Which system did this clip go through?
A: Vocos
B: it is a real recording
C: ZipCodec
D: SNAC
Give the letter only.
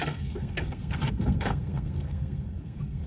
D